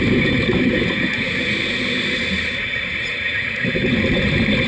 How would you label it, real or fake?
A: real